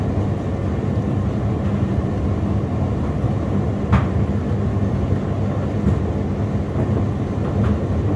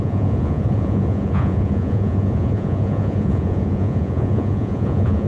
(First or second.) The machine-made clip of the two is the second